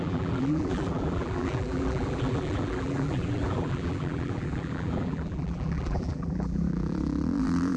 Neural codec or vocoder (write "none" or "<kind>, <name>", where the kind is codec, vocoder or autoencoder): vocoder, BigVGAN v2